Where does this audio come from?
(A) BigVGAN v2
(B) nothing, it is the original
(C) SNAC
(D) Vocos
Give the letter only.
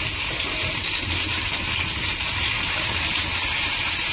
A